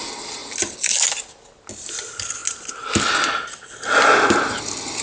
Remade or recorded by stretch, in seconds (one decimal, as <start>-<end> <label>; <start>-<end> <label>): 0.0-5.0 recorded